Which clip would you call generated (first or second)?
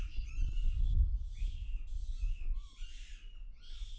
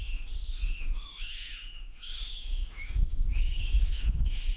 second